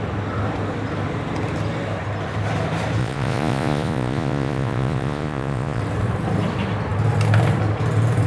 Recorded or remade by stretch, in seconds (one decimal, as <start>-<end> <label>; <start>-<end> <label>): 0.0-3.0 recorded; 3.0-5.8 remade; 5.8-8.3 recorded